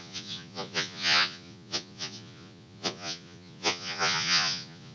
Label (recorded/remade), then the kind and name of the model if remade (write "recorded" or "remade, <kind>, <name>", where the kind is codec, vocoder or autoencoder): remade, vocoder, Vocos